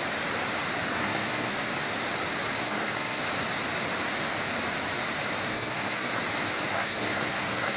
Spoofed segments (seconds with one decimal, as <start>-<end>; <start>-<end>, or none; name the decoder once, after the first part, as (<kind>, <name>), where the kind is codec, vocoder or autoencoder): 0.9-1.5 (codec, SNAC); 2.6-3.2; 5.4-6.2; 6.7-7.8